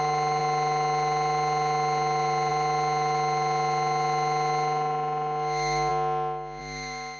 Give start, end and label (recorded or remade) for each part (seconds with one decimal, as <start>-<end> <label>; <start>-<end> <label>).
0.0-7.2 recorded